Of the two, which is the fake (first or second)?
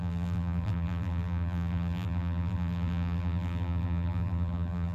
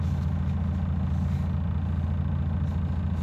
first